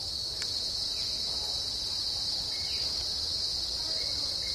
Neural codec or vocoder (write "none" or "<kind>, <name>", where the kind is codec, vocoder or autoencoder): none